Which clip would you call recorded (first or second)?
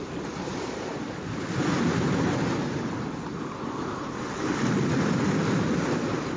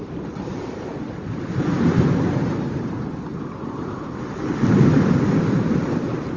first